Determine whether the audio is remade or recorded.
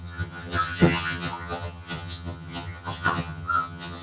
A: remade